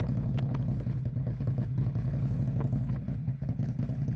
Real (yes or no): no